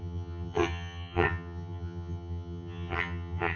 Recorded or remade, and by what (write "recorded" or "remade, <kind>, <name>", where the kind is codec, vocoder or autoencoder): remade, vocoder, HiFi-GAN